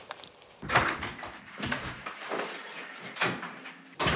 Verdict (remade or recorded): remade